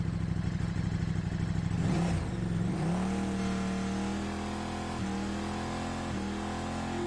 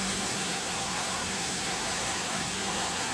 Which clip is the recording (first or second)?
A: first